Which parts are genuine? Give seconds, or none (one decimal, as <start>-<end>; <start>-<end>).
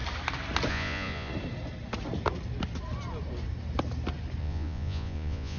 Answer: 0.0-0.7; 1.3-4.4